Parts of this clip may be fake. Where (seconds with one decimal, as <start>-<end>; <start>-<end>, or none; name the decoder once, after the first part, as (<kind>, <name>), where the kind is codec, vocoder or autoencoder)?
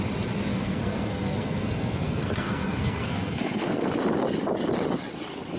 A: 0.5-3.9 (codec, SNAC)